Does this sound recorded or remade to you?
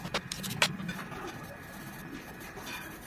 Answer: recorded